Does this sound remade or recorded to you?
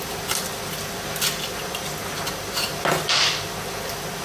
recorded